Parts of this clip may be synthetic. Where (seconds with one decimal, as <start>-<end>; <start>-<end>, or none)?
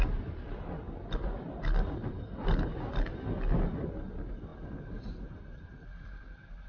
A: none